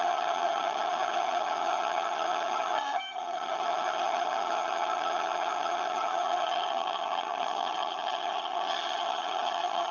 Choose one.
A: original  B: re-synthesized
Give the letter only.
B